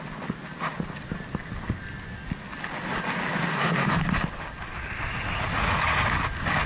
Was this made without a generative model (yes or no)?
yes